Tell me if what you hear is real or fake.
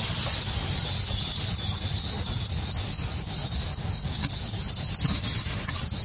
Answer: real